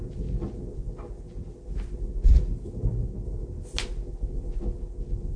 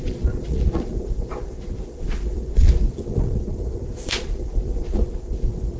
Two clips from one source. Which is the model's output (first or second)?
second